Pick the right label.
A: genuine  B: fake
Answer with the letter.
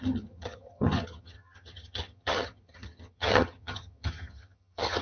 B